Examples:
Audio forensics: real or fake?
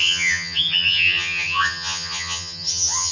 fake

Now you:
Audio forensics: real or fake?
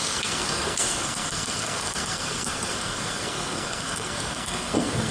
fake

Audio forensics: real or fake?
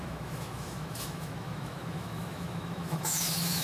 fake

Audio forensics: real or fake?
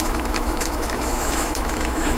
fake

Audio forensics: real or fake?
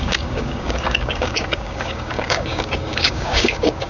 fake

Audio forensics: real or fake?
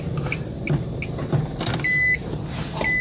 real